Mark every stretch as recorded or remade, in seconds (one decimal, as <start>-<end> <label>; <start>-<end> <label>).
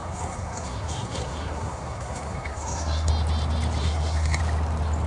0.0-3.1 remade; 3.1-3.8 recorded; 3.8-4.4 remade; 4.4-5.1 recorded